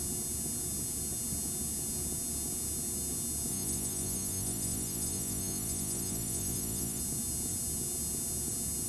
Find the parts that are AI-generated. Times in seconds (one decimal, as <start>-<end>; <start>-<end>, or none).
3.5-7.0